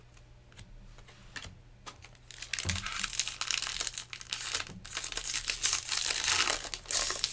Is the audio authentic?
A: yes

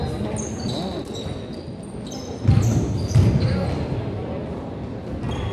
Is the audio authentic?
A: yes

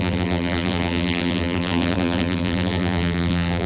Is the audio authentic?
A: no